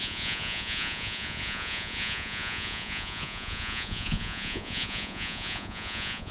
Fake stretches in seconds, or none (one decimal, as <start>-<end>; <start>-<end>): 0.0-6.3